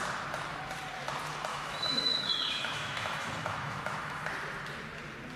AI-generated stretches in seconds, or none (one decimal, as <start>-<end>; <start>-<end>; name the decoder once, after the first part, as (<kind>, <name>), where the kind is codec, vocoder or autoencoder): 1.5-4.2 (autoencoder, DAC-VAE)